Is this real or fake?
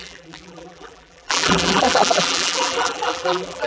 fake